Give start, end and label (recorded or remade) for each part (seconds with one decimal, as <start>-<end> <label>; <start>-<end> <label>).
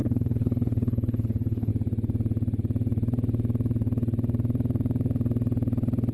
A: 0.0-1.7 remade; 1.7-6.1 recorded